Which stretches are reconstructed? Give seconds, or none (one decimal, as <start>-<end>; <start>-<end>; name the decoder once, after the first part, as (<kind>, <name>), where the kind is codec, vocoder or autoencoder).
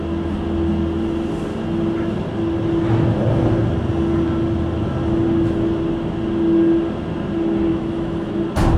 7.7-8.4 (autoencoder, DAC-VAE)